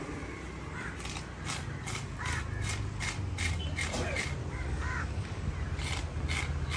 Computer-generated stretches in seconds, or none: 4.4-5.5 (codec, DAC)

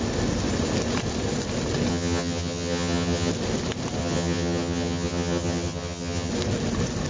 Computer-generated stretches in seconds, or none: 1.9-3.3 (vocoder, HiFi-GAN); 4.0-6.3

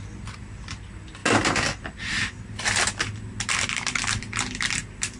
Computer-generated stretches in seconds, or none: none

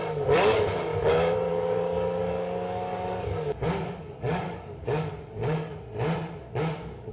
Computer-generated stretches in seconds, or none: 0.0-5.7 (codec, DAC); 6.4-7.1